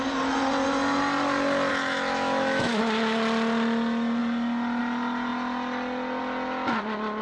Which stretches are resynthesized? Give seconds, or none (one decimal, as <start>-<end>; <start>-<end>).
1.7-2.8